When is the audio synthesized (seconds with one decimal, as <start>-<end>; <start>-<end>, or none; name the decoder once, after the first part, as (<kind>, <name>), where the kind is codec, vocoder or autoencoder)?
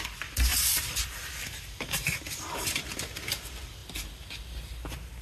0.5-2.7 (vocoder, BigVGAN v2)